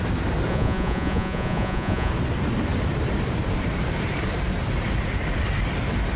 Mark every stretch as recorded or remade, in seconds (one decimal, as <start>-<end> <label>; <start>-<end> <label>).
0.0-0.5 recorded; 0.5-2.1 remade; 2.1-6.2 recorded